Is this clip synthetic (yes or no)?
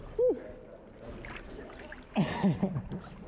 no